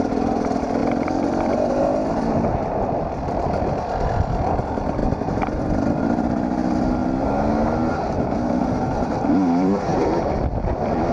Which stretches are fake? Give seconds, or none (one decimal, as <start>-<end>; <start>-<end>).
0.0-0.8; 2.1-7.0; 7.9-11.1